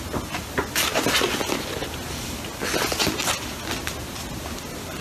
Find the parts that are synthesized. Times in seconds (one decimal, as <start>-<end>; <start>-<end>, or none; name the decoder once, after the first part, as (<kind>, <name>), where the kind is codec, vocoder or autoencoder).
none